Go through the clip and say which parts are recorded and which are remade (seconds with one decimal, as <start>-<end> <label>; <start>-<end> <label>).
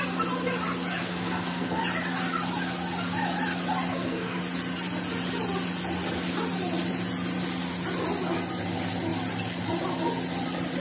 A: 0.0-1.0 recorded; 1.0-1.8 remade; 1.8-3.9 recorded; 3.9-4.4 remade; 4.4-10.8 recorded